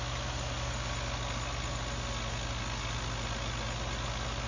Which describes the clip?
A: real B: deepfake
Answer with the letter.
A